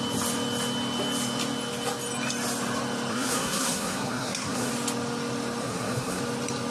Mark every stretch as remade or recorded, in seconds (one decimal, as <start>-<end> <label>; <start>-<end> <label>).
0.0-3.1 recorded; 3.1-4.7 remade; 4.7-5.6 recorded; 5.6-6.2 remade; 6.2-6.7 recorded